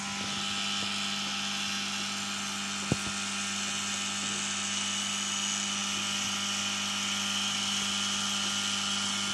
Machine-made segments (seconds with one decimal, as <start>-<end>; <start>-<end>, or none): none